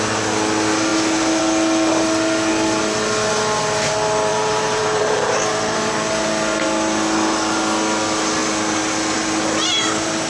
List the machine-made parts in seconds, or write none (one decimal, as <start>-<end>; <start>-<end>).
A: 4.3-5.9